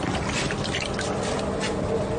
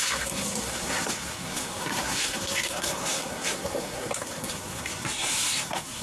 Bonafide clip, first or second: first